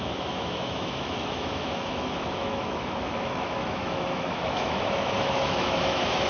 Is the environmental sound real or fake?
fake